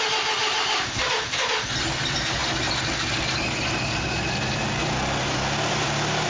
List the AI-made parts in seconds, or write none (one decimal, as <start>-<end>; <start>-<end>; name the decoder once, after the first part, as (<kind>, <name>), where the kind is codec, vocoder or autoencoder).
0.4-1.5 (vocoder, BigVGAN v2)